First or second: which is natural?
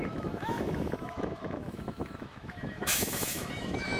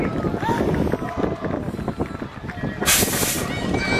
second